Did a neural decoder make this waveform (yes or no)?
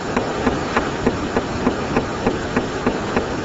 no